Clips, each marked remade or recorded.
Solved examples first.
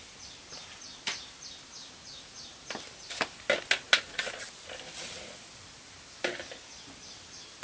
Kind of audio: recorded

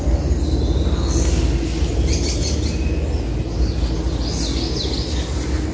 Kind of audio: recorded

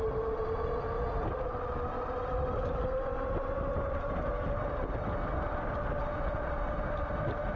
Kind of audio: recorded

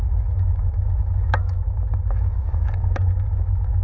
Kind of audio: remade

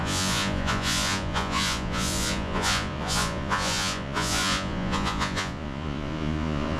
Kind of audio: remade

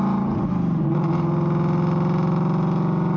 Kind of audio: recorded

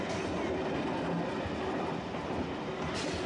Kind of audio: recorded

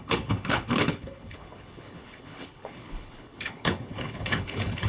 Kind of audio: remade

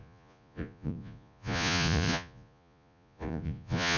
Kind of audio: remade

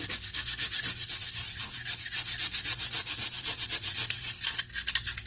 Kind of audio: recorded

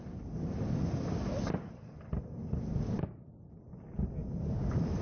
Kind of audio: recorded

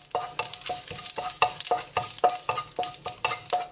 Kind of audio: recorded